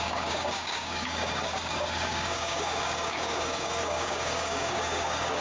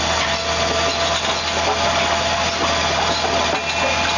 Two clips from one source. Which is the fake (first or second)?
first